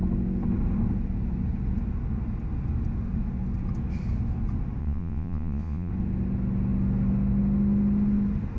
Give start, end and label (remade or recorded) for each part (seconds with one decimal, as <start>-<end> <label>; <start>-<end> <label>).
0.0-4.8 recorded; 4.8-5.9 remade; 5.9-8.6 recorded